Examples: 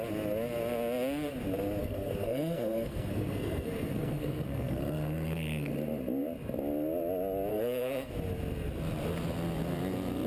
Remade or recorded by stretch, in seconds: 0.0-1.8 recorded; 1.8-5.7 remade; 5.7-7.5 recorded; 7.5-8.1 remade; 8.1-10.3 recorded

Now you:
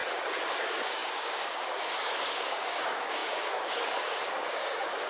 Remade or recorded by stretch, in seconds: 0.0-0.5 recorded; 0.5-5.1 remade

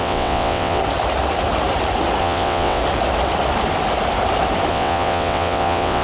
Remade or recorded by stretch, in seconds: 0.0-0.8 remade; 0.8-2.2 recorded; 2.2-2.8 remade; 2.8-4.7 recorded; 4.7-6.0 remade

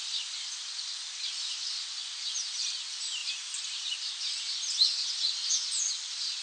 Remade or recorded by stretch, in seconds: 0.0-6.4 recorded

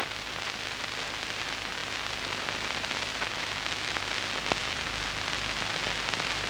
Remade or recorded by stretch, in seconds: 0.0-3.3 recorded; 3.3-4.0 remade; 4.0-6.5 recorded

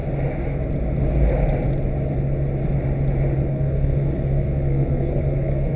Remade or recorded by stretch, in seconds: 0.0-3.5 recorded; 3.5-5.8 remade